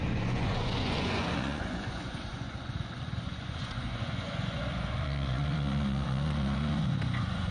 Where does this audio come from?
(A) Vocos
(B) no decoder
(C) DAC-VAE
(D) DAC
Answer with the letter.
A